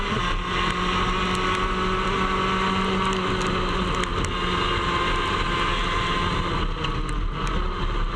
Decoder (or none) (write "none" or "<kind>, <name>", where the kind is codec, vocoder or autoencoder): none